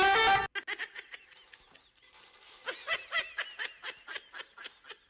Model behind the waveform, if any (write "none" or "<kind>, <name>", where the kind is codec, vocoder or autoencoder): none